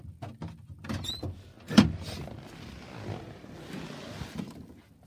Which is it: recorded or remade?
recorded